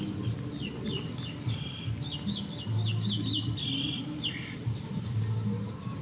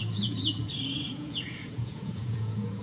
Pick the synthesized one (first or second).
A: second